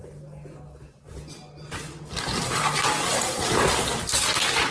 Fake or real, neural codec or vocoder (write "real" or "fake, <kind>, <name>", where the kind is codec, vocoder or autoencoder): real